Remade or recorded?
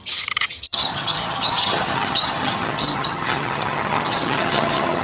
remade